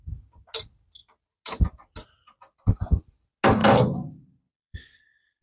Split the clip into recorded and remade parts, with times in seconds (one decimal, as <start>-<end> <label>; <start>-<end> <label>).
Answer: 0.0-5.4 recorded